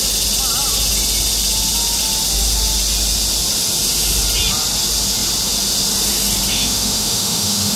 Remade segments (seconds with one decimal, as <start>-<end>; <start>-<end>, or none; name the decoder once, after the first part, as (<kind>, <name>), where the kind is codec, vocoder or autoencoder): 6.5-7.8 (autoencoder, DAC-VAE)